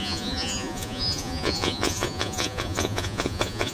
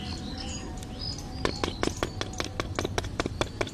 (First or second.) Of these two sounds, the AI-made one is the first